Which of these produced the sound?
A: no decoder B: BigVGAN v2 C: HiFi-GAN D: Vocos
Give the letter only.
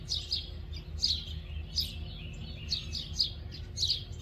A